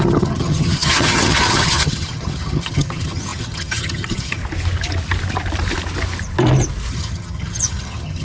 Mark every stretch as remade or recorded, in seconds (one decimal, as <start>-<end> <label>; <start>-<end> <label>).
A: 0.0-4.4 remade; 4.4-6.9 recorded; 6.9-8.2 remade